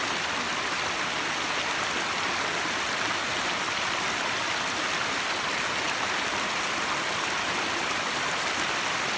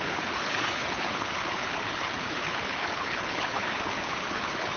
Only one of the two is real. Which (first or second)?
first